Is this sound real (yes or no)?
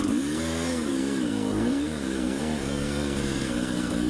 no